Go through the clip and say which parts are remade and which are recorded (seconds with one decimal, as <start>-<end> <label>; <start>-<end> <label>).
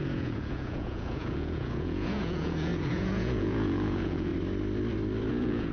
0.0-4.3 remade; 4.3-5.3 recorded; 5.3-5.7 remade